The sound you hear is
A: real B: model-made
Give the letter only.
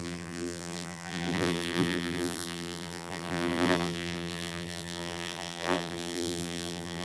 B